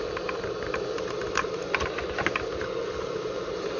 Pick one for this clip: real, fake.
real